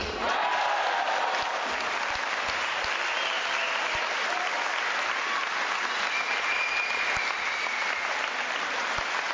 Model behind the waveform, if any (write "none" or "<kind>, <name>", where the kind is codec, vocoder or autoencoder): none